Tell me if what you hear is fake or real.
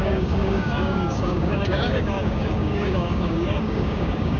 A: fake